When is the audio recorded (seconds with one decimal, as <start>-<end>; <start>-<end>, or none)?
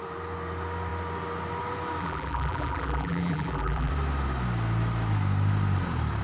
0.0-2.0; 3.9-6.2